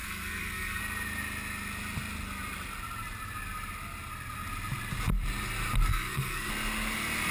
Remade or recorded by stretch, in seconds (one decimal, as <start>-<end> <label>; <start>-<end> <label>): 0.0-0.8 remade; 0.8-5.9 recorded; 5.9-6.5 remade; 6.5-7.3 recorded